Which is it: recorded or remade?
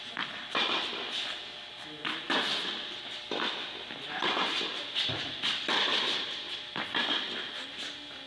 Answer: recorded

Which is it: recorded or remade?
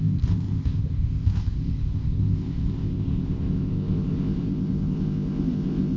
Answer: remade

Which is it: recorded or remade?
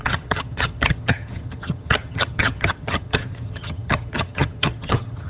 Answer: remade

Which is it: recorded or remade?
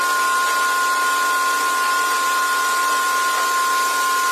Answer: recorded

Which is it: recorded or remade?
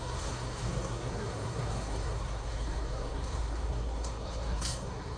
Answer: remade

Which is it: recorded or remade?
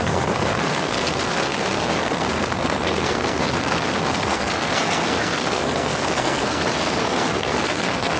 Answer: remade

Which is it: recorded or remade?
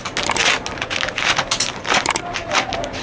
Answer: recorded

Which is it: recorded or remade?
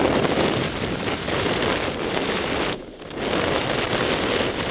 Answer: remade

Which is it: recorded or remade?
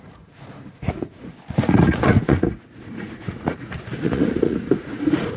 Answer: remade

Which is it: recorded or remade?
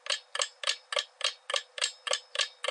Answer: recorded